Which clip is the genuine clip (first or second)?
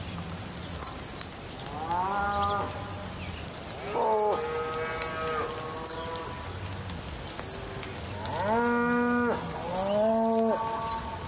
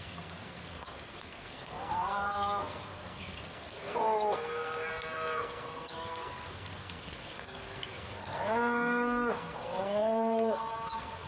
first